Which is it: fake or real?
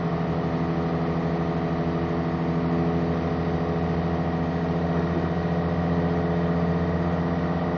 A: real